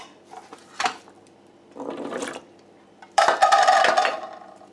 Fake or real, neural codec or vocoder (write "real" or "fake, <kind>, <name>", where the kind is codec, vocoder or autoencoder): fake, vocoder, BigVGAN v2